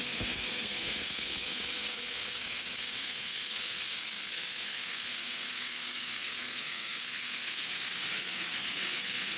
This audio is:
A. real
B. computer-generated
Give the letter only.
B